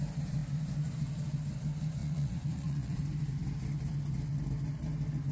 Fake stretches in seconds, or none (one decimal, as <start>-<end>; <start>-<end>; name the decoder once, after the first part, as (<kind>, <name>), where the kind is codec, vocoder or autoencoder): 2.0-3.0 (vocoder, Vocos)